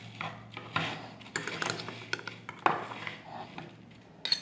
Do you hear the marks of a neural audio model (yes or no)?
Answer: no